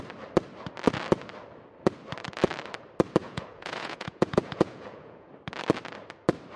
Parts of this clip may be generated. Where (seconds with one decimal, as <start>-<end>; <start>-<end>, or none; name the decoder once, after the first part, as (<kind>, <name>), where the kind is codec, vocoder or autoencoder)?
3.2-5.3 (vocoder, Vocos)